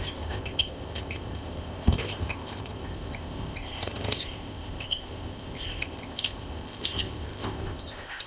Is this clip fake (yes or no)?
yes